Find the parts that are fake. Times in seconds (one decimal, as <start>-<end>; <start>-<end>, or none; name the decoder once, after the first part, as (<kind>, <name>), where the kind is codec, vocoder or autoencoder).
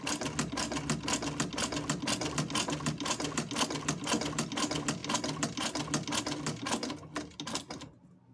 none